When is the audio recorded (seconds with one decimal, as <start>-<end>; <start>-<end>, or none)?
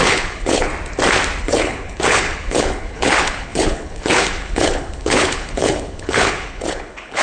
0.7-1.4